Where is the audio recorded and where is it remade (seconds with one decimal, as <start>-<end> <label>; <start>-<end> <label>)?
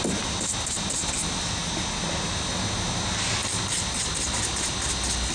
0.0-5.3 recorded